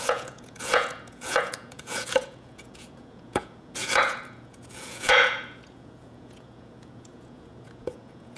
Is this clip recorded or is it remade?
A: remade